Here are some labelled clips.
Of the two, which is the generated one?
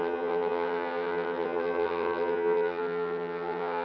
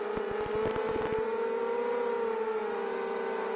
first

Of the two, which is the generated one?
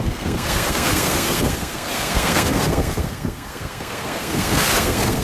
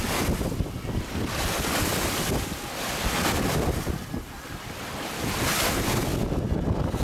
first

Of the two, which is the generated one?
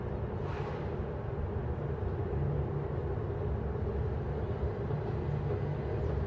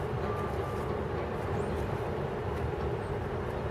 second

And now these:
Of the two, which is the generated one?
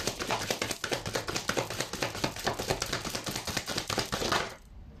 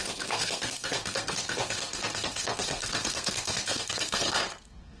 second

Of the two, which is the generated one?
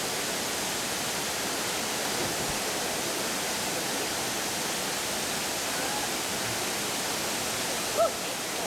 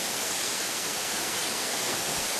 second